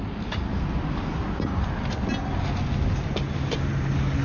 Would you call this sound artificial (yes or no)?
no